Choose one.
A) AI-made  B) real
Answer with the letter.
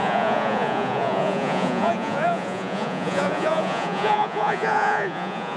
A